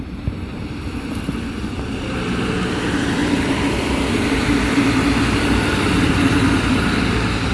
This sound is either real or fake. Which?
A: fake